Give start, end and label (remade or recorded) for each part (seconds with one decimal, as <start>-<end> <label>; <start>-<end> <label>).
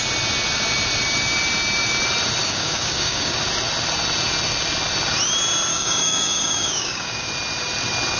0.0-2.4 recorded; 2.4-3.4 remade; 3.4-5.7 recorded; 5.7-7.3 remade; 7.3-8.2 recorded